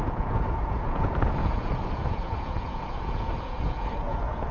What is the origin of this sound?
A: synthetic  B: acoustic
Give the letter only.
A